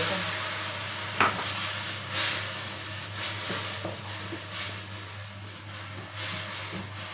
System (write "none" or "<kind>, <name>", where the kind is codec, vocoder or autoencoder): none